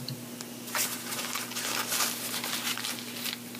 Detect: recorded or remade recorded